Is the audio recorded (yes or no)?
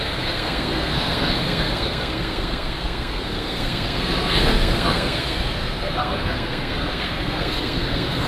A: no